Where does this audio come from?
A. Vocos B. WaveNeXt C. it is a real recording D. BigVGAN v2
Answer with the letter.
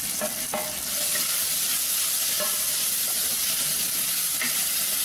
C